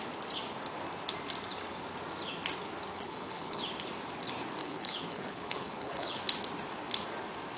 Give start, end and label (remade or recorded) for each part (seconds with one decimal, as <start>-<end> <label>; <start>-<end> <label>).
0.0-2.9 recorded; 2.9-3.6 remade; 3.6-4.6 recorded; 4.6-6.2 remade; 6.2-7.6 recorded